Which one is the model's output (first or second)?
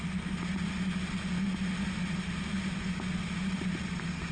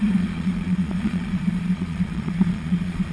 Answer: second